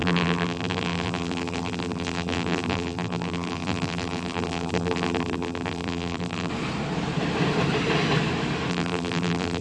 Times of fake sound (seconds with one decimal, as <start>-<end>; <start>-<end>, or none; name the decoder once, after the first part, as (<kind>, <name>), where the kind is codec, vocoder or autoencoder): 0.0-6.5 (vocoder, BigVGAN v2); 8.7-9.6